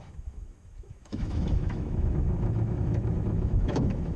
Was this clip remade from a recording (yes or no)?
yes